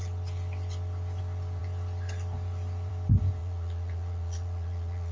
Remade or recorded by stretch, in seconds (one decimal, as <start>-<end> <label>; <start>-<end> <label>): 0.0-3.4 recorded; 3.4-5.1 remade